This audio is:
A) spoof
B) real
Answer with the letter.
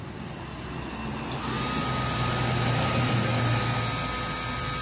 B